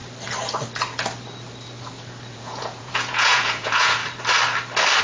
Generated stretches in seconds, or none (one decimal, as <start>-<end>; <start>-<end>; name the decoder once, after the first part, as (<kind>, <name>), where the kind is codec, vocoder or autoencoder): 2.3-4.0 (vocoder, Vocos)